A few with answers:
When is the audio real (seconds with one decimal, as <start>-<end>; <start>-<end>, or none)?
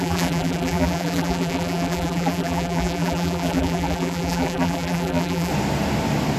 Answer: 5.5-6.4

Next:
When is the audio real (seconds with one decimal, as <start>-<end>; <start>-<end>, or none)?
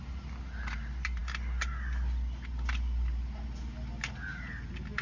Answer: 0.0-5.0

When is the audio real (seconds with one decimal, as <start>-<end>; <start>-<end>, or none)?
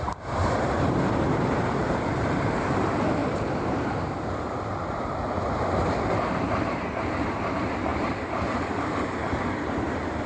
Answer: none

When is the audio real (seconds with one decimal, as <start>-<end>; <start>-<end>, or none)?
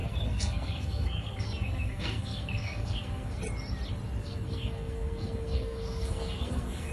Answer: 3.4-4.2